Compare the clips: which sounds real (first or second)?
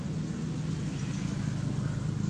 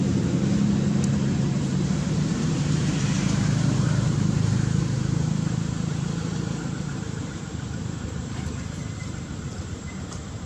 first